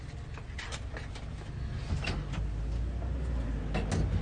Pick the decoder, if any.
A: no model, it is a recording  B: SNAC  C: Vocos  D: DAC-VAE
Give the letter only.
A